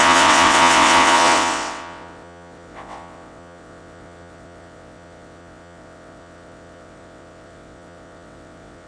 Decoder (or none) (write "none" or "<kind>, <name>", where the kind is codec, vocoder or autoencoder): vocoder, WaveNeXt